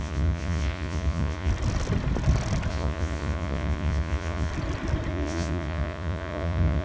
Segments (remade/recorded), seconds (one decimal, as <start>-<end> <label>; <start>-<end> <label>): 0.0-1.5 remade; 1.5-2.7 recorded; 2.7-4.5 remade; 4.5-5.1 recorded; 5.1-6.8 remade